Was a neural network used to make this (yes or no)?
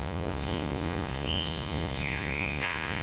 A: yes